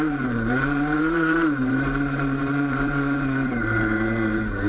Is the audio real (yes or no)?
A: no